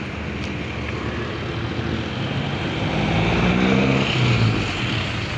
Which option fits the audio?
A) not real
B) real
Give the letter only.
B